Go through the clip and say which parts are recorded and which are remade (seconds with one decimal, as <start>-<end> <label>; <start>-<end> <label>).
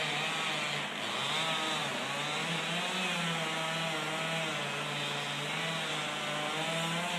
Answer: 0.0-7.2 recorded